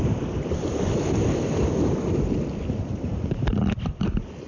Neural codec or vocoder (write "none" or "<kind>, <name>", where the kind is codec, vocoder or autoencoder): none